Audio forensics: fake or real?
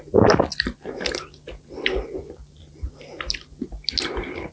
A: real